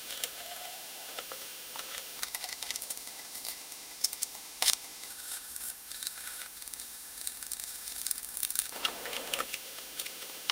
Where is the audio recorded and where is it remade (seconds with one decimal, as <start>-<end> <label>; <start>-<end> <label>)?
0.0-10.5 remade